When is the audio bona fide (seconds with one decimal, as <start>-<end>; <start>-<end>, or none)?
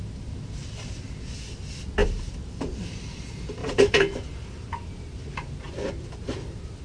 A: 0.0-2.0; 2.7-3.6; 5.9-6.8